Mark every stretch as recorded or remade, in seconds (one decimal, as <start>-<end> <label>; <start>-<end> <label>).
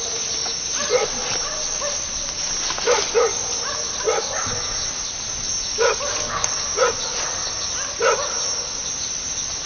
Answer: 0.0-5.7 recorded; 5.7-6.5 remade; 6.5-9.7 recorded